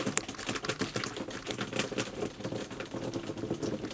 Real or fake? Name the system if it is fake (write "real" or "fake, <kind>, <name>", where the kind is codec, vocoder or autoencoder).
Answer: real